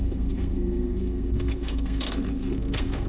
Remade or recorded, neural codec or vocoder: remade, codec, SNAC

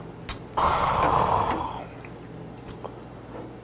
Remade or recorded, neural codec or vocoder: recorded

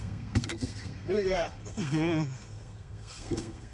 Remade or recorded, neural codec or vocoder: remade, codec, SNAC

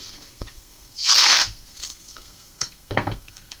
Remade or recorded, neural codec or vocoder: remade, codec, SNAC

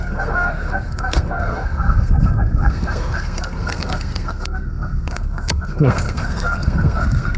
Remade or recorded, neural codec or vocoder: remade, codec, SNAC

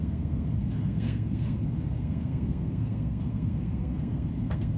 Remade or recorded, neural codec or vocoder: remade, codec, SNAC